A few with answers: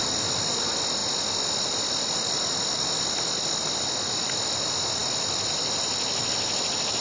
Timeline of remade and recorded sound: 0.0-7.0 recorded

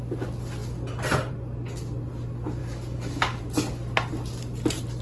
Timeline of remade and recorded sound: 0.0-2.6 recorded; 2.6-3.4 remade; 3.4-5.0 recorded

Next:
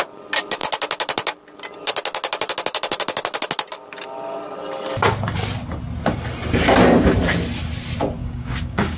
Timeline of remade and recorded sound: 0.0-8.2 recorded; 8.2-9.0 remade

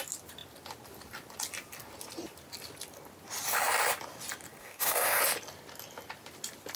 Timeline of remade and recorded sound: 0.0-4.6 recorded; 4.6-5.2 remade; 5.2-6.8 recorded

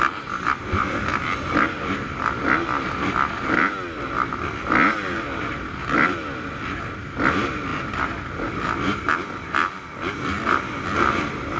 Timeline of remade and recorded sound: 0.0-11.6 recorded